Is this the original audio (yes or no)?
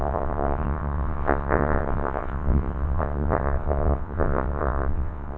no